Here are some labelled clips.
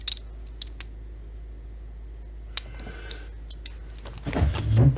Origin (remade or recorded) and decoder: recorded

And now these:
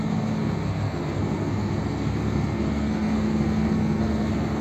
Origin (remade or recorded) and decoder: remade, codec, SNAC